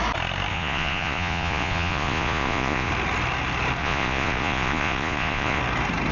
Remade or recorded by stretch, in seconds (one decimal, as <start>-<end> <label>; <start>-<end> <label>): 0.0-0.5 recorded; 0.5-2.9 remade; 2.9-3.8 recorded; 3.8-5.6 remade; 5.6-6.1 recorded